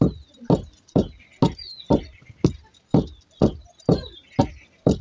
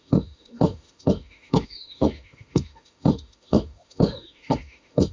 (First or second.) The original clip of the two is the first